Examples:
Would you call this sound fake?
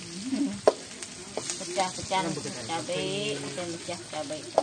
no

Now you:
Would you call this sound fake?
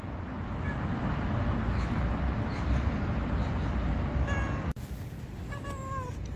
no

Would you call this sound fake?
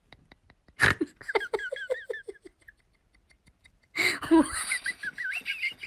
no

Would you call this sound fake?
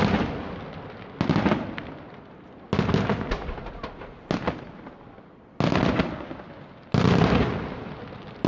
no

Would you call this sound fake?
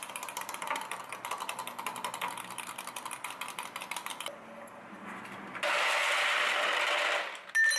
no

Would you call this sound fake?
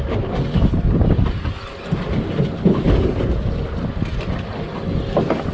no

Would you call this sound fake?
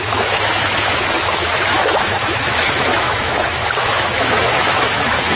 yes